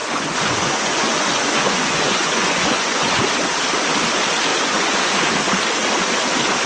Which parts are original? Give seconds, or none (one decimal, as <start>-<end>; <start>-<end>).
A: 3.2-4.5; 5.2-6.7